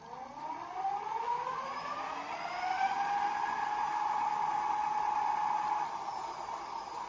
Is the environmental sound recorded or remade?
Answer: recorded